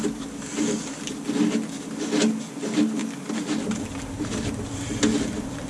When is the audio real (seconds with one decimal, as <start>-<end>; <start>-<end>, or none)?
0.0-5.7